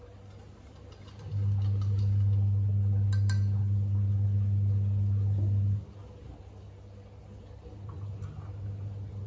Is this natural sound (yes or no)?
yes